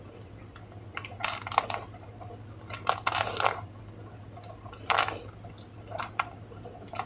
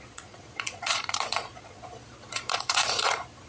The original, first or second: first